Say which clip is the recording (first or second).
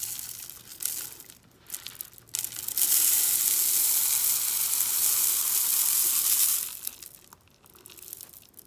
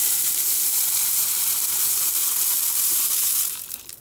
first